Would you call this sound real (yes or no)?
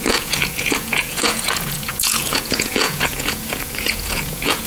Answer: no